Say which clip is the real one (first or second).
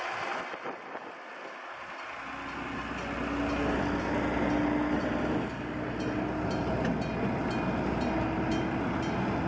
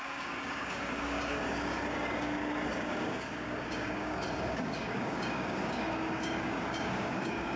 first